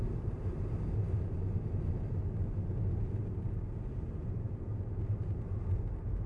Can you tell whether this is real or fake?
real